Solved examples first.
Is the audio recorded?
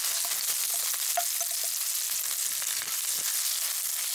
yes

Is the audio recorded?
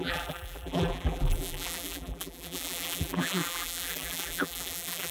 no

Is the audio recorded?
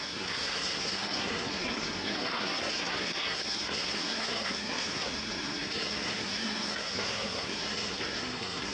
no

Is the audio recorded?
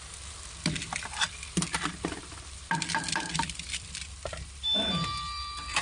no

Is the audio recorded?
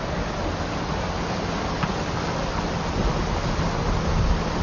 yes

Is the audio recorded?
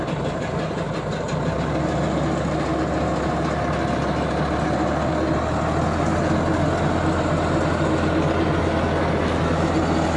yes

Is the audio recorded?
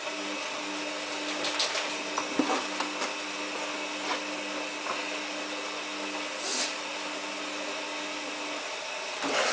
yes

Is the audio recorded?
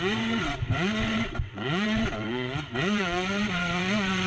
no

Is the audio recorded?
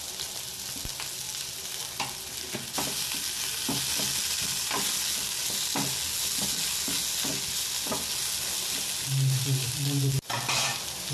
yes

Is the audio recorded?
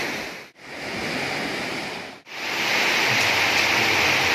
yes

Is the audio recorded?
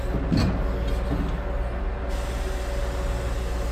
yes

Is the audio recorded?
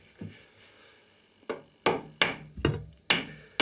yes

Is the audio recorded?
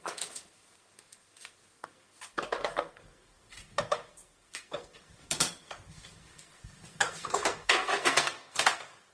no